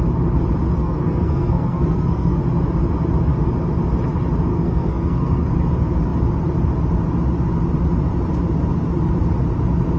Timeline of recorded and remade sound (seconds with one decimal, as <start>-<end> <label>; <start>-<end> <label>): 0.0-0.8 recorded; 0.8-2.4 remade; 2.4-4.5 recorded; 4.5-5.5 remade; 5.5-10.0 recorded